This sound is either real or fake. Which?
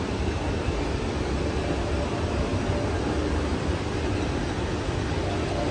real